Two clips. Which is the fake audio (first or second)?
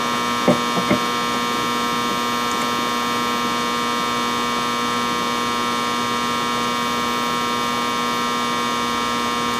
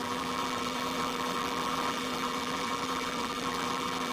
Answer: second